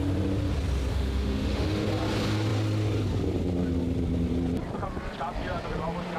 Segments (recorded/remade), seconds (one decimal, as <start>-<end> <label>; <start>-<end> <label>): 0.0-0.9 recorded; 0.9-1.9 remade; 1.9-6.2 recorded